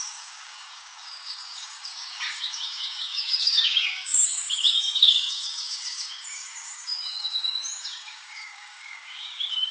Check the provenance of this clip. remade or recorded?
remade